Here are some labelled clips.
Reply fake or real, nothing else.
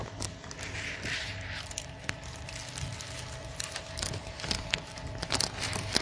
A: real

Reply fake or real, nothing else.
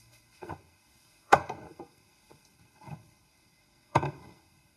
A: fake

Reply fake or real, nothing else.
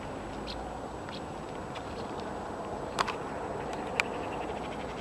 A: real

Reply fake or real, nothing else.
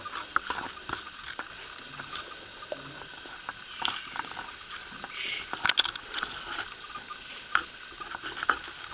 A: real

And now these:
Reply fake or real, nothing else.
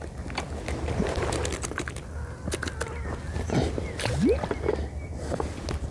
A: real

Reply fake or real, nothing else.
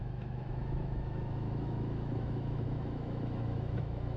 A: fake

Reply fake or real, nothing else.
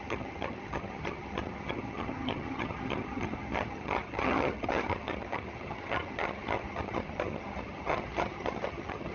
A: fake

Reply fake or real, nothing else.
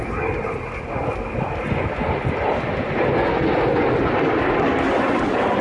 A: real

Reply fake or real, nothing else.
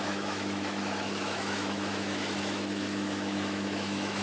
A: fake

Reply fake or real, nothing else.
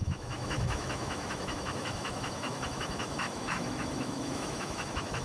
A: fake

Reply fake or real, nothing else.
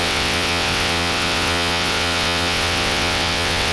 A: fake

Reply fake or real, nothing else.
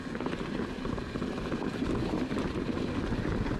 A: real